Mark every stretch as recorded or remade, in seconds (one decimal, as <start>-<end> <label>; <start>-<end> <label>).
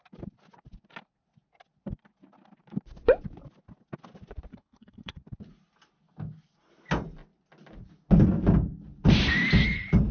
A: 0.0-4.5 recorded; 4.5-5.2 remade; 5.2-10.1 recorded